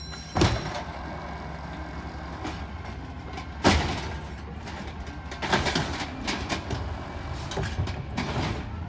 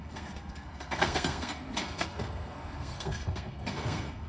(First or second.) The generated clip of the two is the second